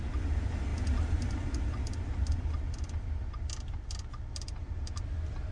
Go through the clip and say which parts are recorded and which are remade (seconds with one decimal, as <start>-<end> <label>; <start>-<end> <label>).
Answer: 0.0-5.5 recorded